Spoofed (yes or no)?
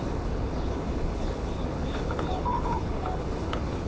yes